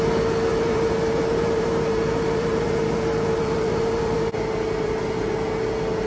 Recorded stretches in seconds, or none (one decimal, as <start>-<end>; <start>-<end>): 0.0-0.5; 4.2-6.1